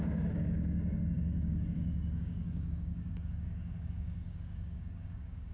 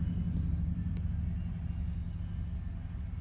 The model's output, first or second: first